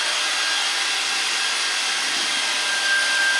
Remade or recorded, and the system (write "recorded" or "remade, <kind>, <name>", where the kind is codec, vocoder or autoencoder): recorded